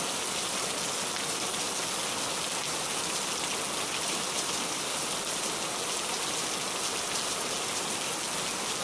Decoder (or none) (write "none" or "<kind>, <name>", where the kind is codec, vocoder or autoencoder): none